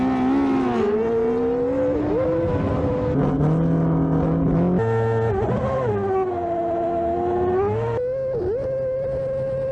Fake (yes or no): no